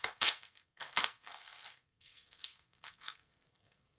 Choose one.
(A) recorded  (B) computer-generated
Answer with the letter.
B